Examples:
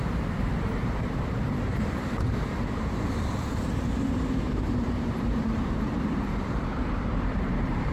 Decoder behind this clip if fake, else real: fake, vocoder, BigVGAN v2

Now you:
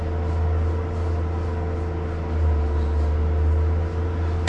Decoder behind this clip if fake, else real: real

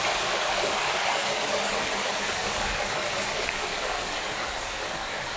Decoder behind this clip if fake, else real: fake, codec, DAC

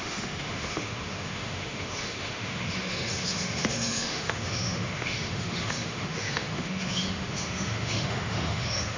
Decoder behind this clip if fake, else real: fake, autoencoder, DAC-VAE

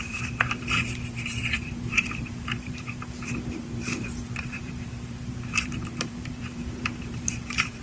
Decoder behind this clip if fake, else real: fake, vocoder, BigVGAN v2